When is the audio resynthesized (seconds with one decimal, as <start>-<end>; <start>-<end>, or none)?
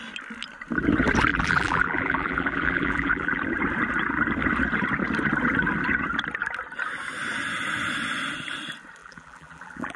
1.3-3.4; 9.0-10.0